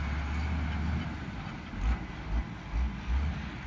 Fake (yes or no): no